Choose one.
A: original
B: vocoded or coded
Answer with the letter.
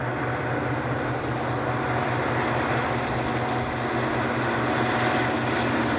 A